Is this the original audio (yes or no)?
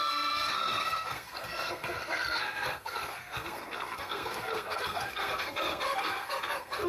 no